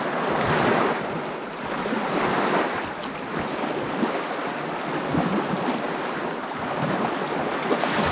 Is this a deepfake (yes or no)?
no